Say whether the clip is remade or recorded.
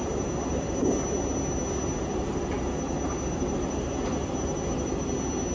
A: recorded